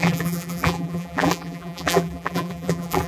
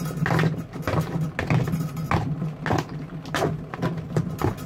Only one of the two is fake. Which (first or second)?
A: first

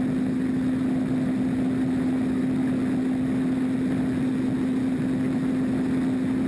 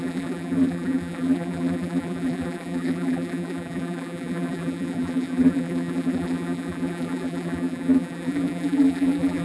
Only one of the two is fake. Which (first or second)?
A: second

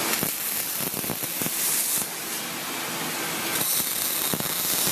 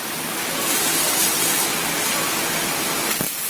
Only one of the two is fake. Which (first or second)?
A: second